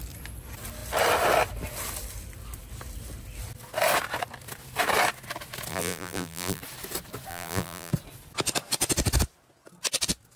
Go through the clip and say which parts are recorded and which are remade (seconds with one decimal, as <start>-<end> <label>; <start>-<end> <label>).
0.0-5.7 recorded; 5.7-6.6 remade; 6.6-7.3 recorded; 7.3-7.9 remade; 7.9-10.4 recorded